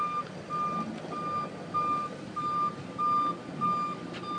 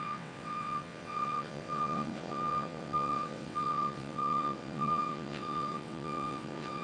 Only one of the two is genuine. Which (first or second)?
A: first